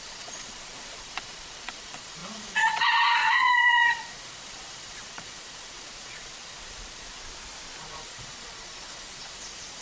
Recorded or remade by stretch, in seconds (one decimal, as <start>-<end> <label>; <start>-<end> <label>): 0.0-7.2 remade; 7.2-7.8 recorded; 7.8-9.8 remade